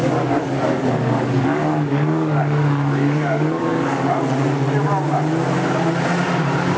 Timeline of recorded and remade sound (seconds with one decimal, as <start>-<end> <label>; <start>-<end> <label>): 0.0-4.1 remade; 4.1-6.8 recorded